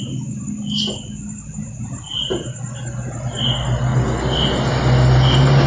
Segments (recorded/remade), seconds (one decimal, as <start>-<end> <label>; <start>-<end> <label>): 0.0-5.7 recorded